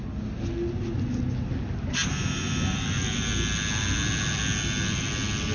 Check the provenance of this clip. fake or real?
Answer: real